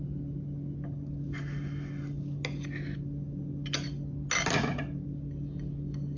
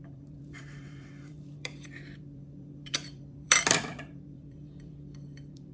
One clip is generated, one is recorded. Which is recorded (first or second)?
first